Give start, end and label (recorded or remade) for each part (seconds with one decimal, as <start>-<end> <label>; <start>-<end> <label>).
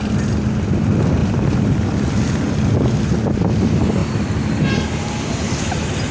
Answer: 0.0-6.1 recorded